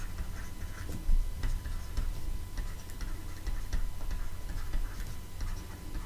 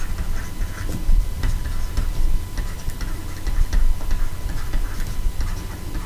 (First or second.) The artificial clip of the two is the second